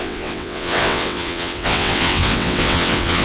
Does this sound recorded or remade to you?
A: remade